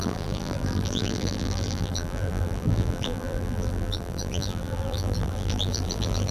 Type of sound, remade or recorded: remade